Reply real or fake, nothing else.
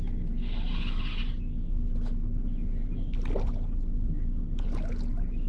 real